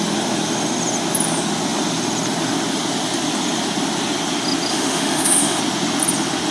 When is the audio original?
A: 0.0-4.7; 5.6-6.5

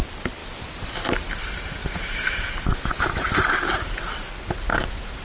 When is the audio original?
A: 0.0-5.2

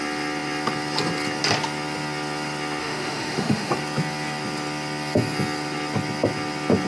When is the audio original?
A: 0.0-2.8; 3.7-6.9

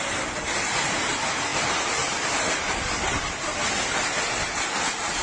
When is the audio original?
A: 0.0-5.2